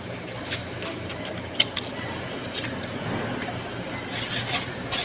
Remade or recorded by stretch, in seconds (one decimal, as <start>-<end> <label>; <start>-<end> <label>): 0.0-0.6 recorded; 0.6-1.1 remade; 1.1-5.0 recorded